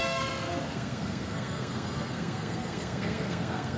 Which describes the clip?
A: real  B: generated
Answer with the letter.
B